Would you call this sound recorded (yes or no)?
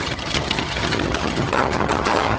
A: no